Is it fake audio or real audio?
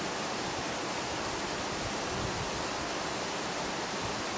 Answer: real